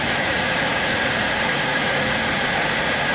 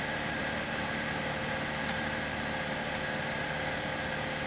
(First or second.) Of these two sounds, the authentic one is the second